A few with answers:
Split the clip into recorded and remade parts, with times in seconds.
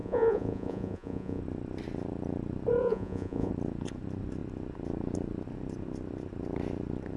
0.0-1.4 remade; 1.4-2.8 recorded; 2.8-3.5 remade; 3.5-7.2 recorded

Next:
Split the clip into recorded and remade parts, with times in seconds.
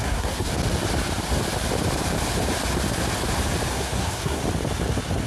0.0-0.5 remade; 0.5-3.7 recorded; 3.7-4.4 remade; 4.4-5.3 recorded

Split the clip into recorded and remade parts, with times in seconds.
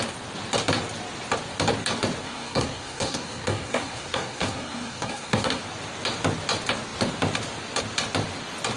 0.0-2.2 recorded; 2.2-5.6 remade; 5.6-8.8 recorded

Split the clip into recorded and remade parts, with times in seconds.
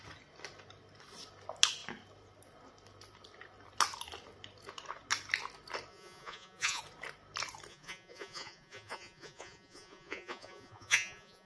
0.0-5.9 recorded; 5.9-6.8 remade; 6.8-7.7 recorded; 7.7-11.5 remade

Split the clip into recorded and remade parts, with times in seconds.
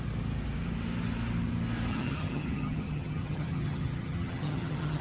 0.0-1.9 recorded; 1.9-5.0 remade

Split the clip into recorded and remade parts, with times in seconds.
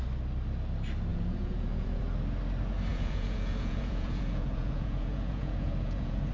0.0-1.1 recorded; 1.1-2.0 remade; 2.0-2.9 recorded; 2.9-6.3 remade